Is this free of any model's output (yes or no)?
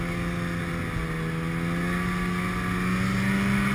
yes